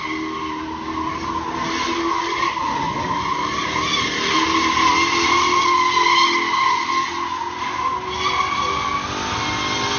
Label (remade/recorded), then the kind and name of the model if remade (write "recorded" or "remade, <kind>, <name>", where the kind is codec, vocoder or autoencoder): recorded